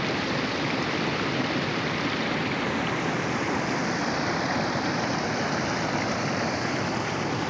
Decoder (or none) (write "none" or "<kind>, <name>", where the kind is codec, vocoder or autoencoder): none